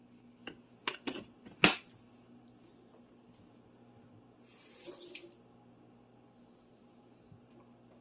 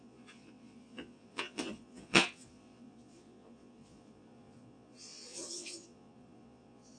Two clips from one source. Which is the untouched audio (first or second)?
first